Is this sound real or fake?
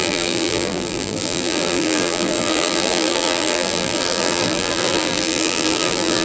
fake